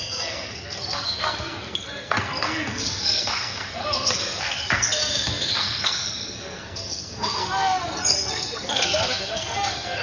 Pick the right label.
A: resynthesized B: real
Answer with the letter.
A